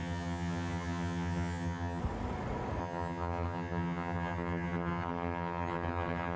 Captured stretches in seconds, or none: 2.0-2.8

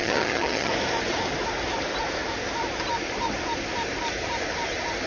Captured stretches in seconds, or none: 0.7-5.1

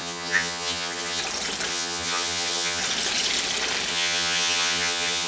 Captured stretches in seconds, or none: 1.2-1.7; 2.8-3.9

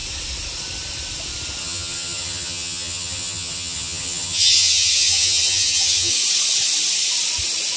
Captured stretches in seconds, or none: 0.0-1.6; 6.1-7.8